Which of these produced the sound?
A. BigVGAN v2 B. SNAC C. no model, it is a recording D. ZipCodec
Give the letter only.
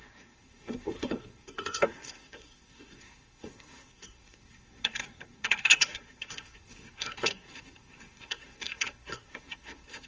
B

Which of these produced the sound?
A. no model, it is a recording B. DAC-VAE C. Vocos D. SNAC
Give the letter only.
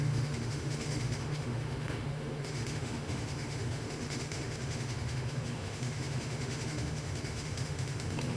B